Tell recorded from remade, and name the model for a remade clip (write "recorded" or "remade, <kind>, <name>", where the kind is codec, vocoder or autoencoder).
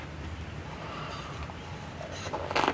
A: recorded